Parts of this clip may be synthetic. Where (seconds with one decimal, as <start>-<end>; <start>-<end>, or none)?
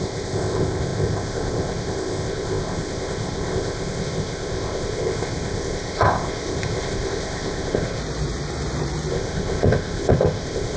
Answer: 0.0-8.0; 9.1-10.8